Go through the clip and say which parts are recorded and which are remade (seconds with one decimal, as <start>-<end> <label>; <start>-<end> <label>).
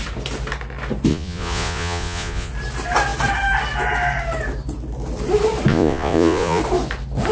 0.0-1.1 recorded; 1.1-2.5 remade; 2.5-5.7 recorded; 5.7-6.6 remade; 6.6-7.3 recorded